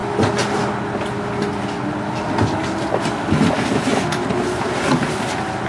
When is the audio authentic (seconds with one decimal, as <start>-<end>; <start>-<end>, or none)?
0.0-5.7